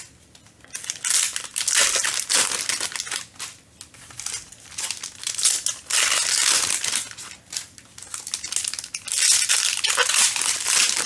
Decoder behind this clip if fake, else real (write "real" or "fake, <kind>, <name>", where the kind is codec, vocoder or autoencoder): real